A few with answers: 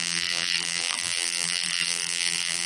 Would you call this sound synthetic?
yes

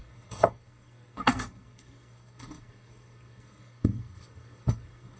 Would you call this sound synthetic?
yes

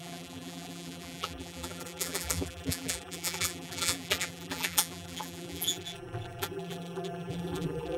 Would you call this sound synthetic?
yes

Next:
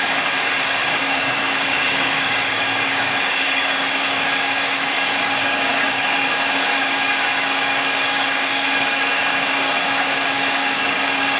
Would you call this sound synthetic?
yes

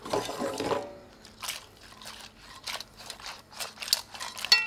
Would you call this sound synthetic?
no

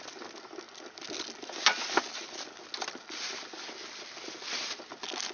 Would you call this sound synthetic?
no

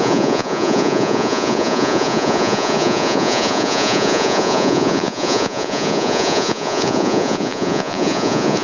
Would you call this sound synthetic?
yes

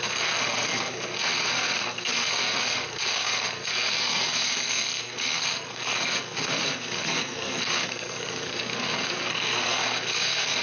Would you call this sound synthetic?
yes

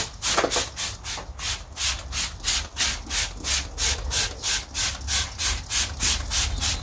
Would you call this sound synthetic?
no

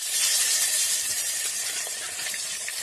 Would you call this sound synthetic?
yes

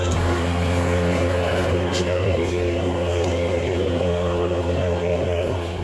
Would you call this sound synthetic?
yes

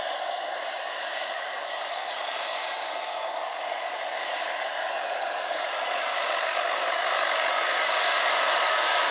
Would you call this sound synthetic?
yes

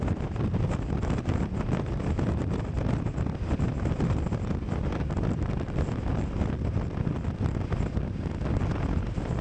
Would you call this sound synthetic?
no